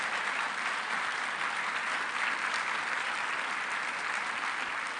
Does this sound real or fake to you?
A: real